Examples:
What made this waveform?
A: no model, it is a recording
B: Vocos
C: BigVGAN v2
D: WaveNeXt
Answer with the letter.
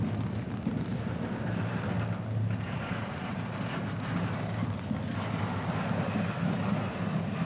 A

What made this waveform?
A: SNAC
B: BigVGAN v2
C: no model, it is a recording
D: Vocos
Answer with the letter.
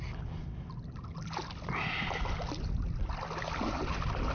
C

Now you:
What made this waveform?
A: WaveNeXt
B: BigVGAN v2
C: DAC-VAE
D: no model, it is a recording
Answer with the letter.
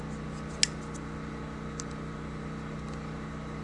D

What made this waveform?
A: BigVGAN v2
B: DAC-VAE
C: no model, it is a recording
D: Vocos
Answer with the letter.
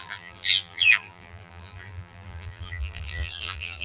A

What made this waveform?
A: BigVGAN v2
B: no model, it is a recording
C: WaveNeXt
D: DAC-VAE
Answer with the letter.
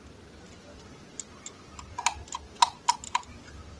B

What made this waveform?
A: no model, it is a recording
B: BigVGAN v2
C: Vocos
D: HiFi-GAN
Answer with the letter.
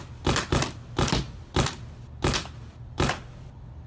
A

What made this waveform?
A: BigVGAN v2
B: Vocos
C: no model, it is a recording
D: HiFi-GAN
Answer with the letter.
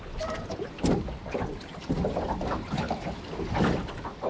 C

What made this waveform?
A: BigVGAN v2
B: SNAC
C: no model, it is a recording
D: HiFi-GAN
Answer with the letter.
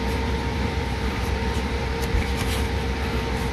A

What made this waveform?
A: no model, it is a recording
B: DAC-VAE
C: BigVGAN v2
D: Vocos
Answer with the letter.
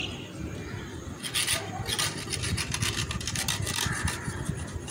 A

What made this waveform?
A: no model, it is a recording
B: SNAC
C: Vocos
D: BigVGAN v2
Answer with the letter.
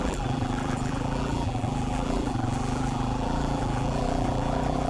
D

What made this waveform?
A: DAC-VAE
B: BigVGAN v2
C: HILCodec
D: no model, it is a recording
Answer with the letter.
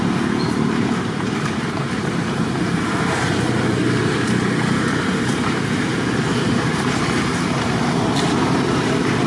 B